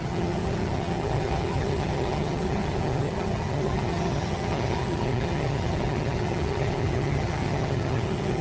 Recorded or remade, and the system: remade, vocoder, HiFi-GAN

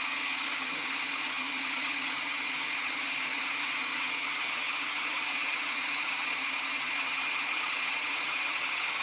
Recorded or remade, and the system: remade, vocoder, HiFi-GAN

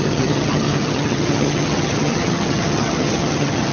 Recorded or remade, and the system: remade, vocoder, HiFi-GAN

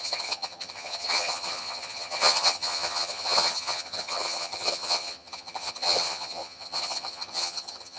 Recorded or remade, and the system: remade, vocoder, HiFi-GAN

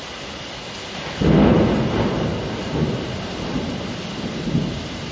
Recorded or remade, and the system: recorded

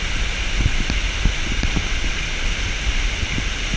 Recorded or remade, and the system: recorded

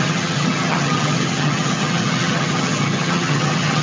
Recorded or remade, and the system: remade, vocoder, HiFi-GAN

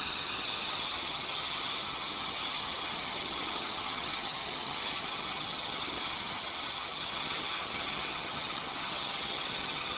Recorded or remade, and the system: remade, vocoder, HiFi-GAN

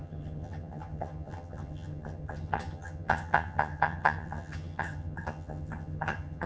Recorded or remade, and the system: remade, vocoder, HiFi-GAN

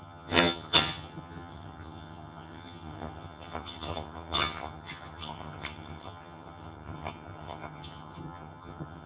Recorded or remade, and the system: remade, vocoder, HiFi-GAN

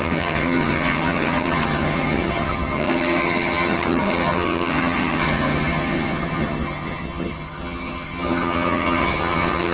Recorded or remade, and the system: remade, vocoder, HiFi-GAN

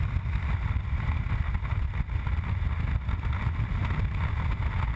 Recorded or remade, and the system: recorded